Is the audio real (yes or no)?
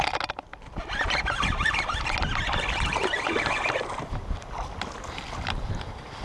yes